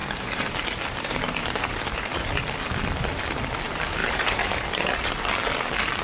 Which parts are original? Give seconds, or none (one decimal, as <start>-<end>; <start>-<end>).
2.3-4.0; 5.3-6.0